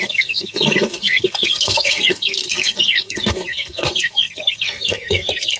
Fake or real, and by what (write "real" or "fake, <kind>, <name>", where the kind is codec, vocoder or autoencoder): fake, codec, SNAC